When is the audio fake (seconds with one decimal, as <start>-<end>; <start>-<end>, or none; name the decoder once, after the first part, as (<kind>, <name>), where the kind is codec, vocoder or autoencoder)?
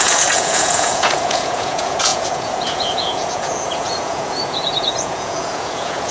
0.0-6.1 (vocoder, Vocos)